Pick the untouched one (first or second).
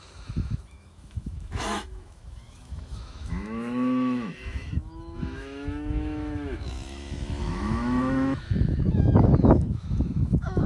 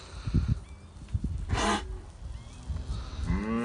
second